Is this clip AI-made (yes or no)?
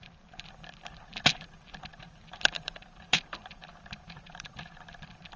yes